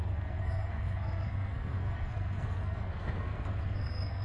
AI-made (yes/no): yes